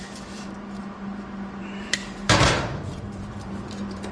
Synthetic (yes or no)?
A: yes